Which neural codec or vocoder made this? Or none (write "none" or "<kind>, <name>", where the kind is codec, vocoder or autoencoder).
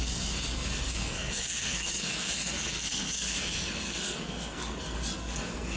codec, SNAC